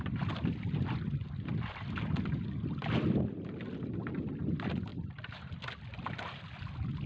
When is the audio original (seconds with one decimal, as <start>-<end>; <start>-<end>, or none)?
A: 0.0-4.9; 5.5-7.1